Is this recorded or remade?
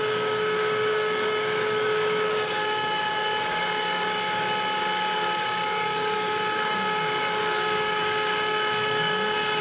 remade